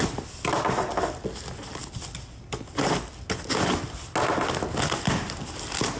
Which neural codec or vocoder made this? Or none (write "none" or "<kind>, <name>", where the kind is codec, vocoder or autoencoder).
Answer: none